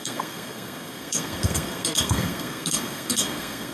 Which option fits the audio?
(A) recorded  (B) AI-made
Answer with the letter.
B